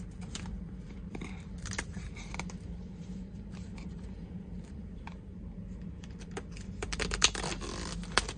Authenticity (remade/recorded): remade